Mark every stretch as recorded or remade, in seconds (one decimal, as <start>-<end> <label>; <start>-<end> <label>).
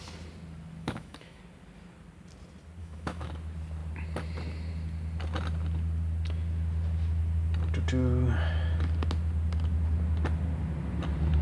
0.0-0.8 recorded; 0.8-1.4 remade; 1.4-2.8 recorded; 2.8-3.3 remade; 3.3-11.4 recorded